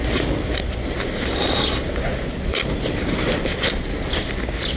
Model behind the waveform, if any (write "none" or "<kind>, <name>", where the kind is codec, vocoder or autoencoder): none